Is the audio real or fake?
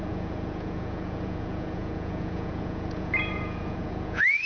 fake